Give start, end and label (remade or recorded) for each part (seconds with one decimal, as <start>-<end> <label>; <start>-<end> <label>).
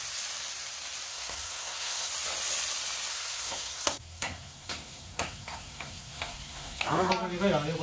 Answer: 0.0-1.1 recorded; 1.1-2.1 remade; 2.1-3.1 recorded; 3.1-7.1 remade; 7.1-7.8 recorded